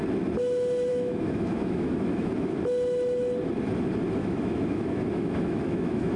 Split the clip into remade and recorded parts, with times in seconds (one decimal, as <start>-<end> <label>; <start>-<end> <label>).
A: 0.0-0.9 recorded; 0.9-2.3 remade; 2.3-4.2 recorded; 4.2-6.2 remade